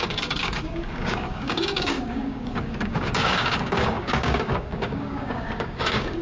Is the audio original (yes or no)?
no